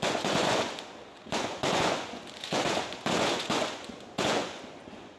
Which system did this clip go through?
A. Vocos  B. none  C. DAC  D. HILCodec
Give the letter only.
A